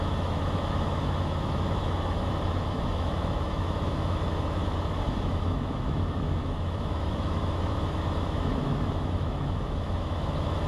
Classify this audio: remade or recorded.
remade